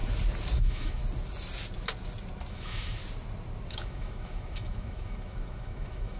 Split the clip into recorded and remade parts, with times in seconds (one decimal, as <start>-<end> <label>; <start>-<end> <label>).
0.0-0.6 recorded; 0.6-1.0 remade; 1.0-2.5 recorded; 2.5-3.0 remade; 3.0-3.7 recorded; 3.7-6.2 remade